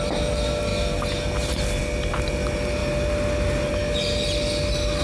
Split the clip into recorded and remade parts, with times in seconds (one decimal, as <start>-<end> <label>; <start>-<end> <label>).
0.0-5.0 recorded